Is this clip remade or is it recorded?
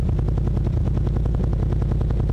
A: recorded